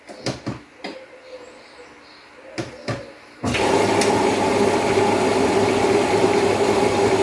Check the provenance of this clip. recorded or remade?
recorded